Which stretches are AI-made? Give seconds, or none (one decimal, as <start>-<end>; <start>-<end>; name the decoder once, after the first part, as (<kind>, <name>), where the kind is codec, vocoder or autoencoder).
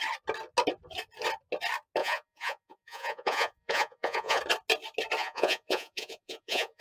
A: 2.0-4.4 (vocoder, Vocos); 5.2-6.8